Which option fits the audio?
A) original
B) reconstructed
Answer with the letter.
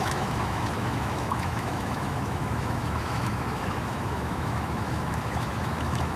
B